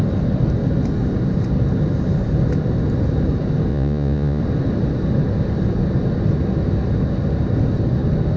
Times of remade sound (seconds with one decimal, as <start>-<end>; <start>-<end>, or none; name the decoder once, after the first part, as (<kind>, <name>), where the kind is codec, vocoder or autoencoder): 3.7-4.4 (vocoder, Vocos)